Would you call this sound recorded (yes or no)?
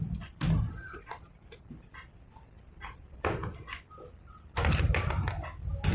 yes